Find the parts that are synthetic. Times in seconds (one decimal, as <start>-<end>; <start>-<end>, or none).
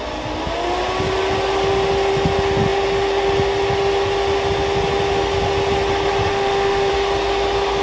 6.3-6.9